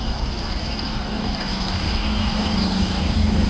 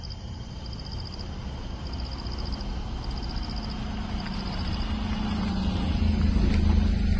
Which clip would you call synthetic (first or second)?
first